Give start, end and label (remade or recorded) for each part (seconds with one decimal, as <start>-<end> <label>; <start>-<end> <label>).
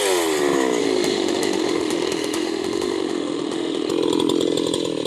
0.0-0.8 recorded; 0.8-3.9 remade; 3.9-5.1 recorded